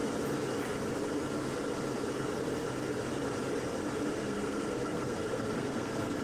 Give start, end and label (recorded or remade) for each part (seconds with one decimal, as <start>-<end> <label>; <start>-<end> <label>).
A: 0.0-4.2 recorded; 4.2-6.2 remade